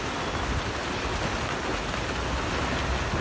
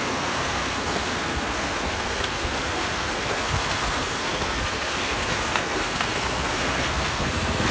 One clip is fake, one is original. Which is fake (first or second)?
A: second